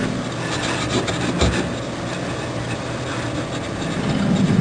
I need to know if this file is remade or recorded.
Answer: recorded